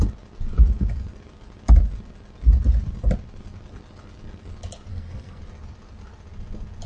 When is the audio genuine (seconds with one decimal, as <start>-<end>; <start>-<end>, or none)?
0.0-4.9; 5.4-6.9